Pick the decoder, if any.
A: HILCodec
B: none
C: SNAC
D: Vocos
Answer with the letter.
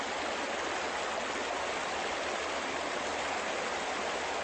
B